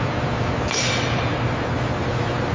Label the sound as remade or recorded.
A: recorded